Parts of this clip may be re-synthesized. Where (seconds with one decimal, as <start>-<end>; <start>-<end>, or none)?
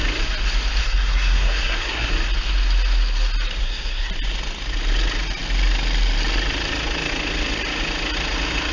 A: 0.8-2.1; 3.6-4.1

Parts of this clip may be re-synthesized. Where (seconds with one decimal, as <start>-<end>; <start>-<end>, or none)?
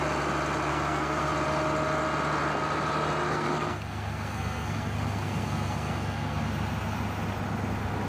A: 0.7-1.3; 3.3-6.4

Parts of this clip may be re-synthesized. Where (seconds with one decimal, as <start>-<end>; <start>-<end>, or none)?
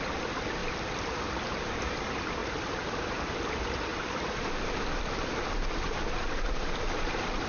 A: 0.6-1.2; 2.4-3.5; 3.9-6.0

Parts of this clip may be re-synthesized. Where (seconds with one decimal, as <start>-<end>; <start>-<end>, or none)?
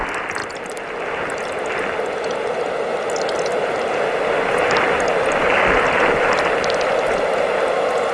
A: none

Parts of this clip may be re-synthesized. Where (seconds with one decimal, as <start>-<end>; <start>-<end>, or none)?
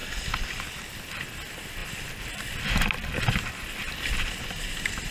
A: none